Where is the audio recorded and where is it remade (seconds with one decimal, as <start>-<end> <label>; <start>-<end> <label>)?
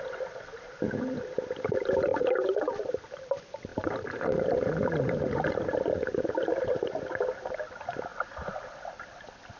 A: 0.0-2.1 recorded; 2.1-2.9 remade; 2.9-3.7 recorded; 3.7-7.0 remade; 7.0-9.6 recorded